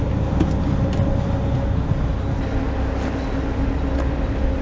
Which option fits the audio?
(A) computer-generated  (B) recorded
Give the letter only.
B